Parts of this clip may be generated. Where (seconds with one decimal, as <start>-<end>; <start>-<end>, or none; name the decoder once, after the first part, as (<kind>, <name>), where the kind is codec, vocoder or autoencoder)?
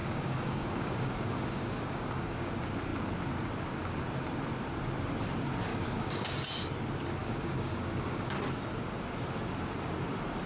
0.0-2.5 (codec, DAC); 5.7-6.3; 7.2-8.3